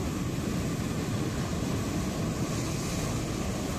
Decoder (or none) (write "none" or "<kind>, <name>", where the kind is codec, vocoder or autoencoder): none